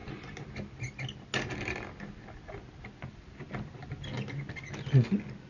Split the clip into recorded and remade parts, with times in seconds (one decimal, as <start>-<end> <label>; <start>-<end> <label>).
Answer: 0.0-5.5 recorded